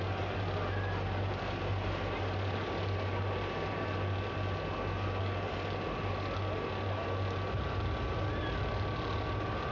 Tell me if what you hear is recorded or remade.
recorded